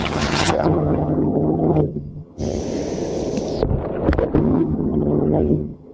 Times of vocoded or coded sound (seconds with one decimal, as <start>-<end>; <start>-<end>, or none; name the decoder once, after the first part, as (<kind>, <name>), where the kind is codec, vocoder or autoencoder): 0.0-2.6 (vocoder, HiFi-GAN); 4.4-5.9